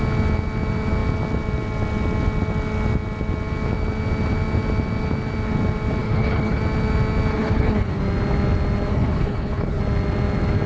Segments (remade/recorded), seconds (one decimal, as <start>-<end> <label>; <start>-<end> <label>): 0.0-6.0 recorded; 6.0-6.6 remade; 6.6-7.3 recorded; 7.3-8.0 remade; 8.0-8.9 recorded; 8.9-9.8 remade; 9.8-10.7 recorded